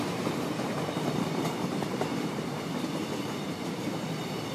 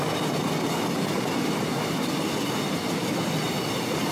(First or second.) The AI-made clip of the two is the first